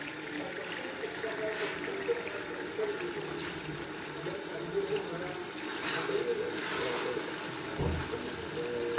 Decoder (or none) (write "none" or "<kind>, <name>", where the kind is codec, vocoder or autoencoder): none